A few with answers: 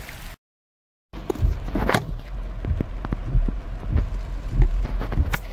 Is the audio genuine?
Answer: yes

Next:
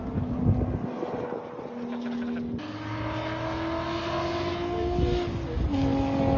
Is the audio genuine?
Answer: yes